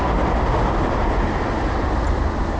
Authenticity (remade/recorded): recorded